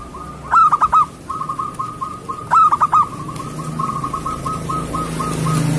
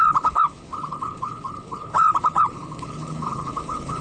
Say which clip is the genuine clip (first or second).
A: first